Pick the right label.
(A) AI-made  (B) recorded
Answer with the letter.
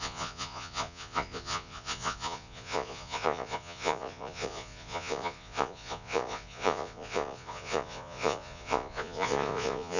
A